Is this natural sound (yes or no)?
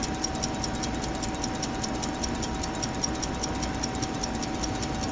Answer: yes